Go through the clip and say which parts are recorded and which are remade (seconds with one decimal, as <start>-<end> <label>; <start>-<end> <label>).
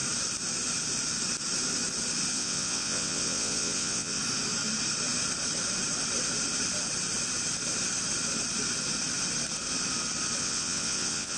0.0-2.3 recorded; 2.3-4.2 remade; 4.2-10.4 recorded; 10.4-11.4 remade